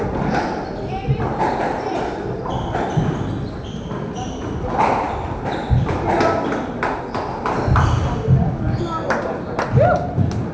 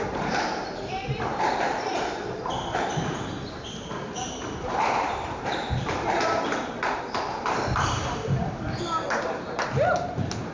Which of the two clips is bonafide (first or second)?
first